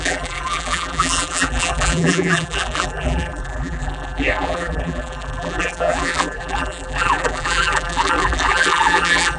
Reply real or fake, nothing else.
fake